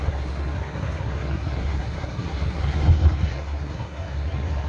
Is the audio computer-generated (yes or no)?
yes